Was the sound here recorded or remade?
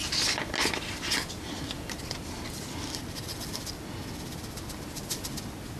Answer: recorded